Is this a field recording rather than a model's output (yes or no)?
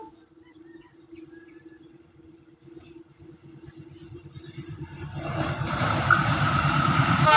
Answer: no